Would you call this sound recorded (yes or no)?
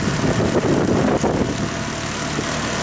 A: yes